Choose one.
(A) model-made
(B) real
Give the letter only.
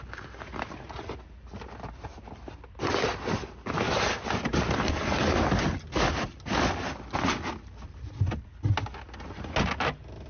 B